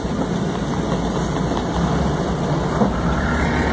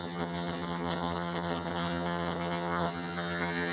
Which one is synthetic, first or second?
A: second